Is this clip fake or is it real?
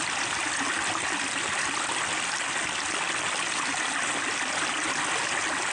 real